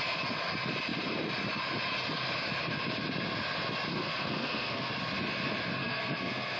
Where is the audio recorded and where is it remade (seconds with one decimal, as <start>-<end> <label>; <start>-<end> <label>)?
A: 0.0-3.9 recorded; 3.9-4.9 remade; 4.9-5.8 recorded; 5.8-6.6 remade